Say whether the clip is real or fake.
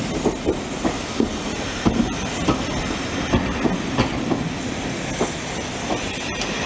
real